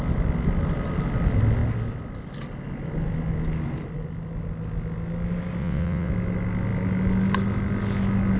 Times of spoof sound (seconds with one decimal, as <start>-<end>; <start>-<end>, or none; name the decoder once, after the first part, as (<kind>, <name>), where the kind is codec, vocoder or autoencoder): 5.6-6.1 (vocoder, WaveNeXt)